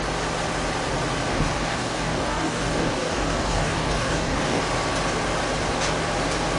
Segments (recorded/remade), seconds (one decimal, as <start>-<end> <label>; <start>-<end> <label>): 0.0-1.3 recorded; 1.3-4.6 remade; 4.6-6.6 recorded